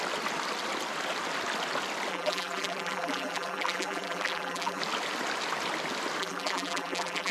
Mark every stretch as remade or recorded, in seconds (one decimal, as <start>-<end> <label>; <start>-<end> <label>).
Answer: 0.0-2.1 recorded; 2.1-4.8 remade; 4.8-6.2 recorded; 6.2-7.3 remade